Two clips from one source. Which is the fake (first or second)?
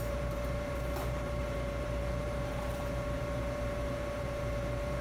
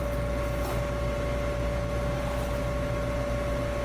first